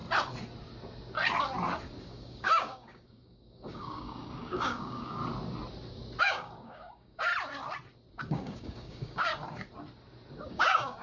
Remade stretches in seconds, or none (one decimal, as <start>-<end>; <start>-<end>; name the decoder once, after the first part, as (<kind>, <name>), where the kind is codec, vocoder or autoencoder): 2.0-5.2 (codec, DAC); 6.2-7.3; 8.3-9.3; 10.5-11.0